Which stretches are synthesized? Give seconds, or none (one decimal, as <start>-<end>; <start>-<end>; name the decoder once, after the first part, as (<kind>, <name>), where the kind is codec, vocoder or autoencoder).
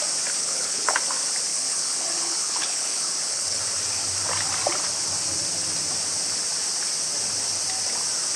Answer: 0.4-1.0 (codec, HILCodec); 1.5-3.6